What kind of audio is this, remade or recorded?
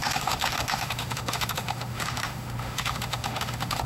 remade